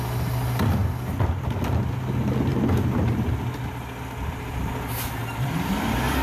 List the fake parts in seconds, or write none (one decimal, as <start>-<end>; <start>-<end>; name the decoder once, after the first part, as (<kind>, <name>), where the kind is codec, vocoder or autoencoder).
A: none